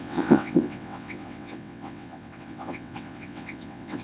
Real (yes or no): no